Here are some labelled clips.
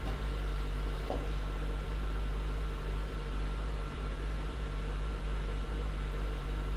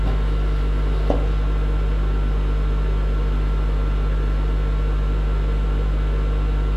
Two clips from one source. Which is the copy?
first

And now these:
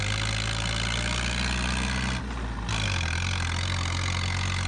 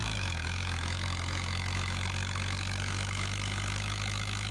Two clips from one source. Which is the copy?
second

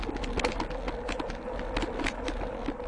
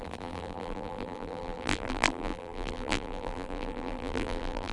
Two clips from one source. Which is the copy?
second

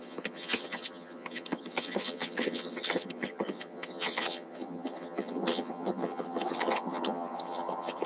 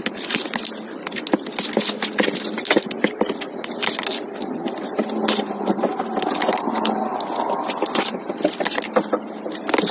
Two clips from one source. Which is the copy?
first